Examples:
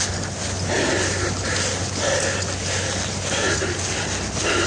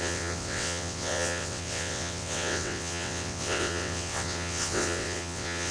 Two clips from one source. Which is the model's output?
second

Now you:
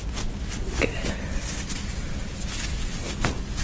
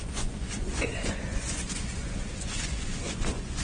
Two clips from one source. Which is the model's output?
second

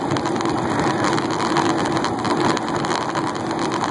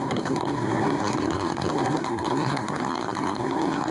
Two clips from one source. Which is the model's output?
second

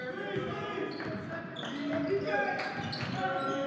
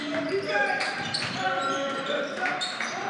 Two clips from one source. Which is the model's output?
second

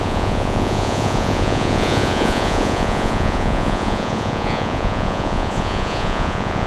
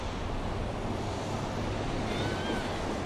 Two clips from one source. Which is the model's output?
first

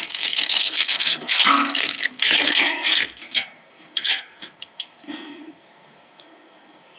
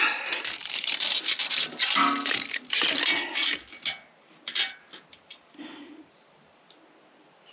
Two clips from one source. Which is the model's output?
first